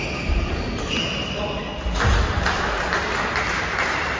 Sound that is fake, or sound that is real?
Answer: real